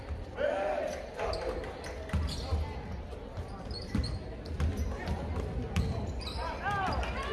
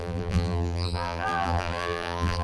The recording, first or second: first